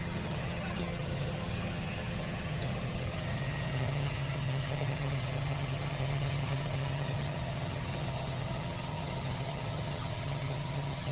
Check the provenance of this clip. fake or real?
fake